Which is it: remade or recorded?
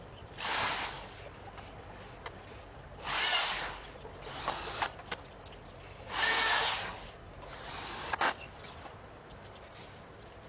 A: recorded